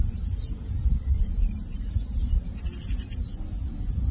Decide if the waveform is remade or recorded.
recorded